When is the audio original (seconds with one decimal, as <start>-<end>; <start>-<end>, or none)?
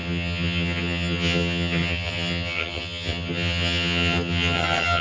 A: none